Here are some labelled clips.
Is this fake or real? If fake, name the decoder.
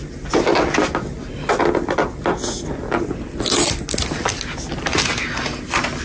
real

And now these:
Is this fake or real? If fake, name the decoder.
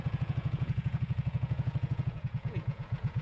fake, vocoder, Vocos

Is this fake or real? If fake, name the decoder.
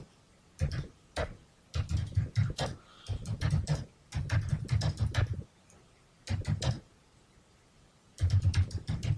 fake, vocoder, BigVGAN v2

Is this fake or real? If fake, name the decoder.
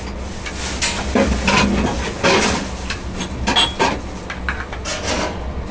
real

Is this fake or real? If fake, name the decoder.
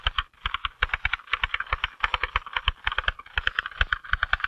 real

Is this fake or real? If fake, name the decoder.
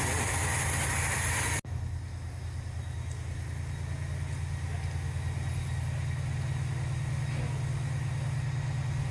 real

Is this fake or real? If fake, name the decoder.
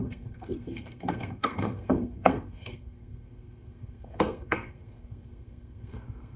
fake, codec, SNAC